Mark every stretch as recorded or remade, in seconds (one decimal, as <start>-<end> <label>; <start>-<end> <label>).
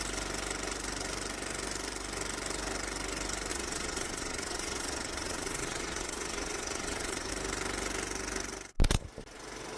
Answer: 0.0-3.5 recorded; 3.5-7.3 remade; 7.3-9.8 recorded